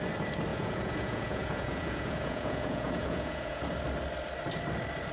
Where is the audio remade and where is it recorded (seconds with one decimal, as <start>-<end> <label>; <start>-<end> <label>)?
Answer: 0.0-0.5 recorded; 0.5-3.6 remade; 3.6-5.1 recorded